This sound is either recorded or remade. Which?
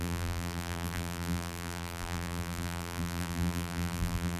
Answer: remade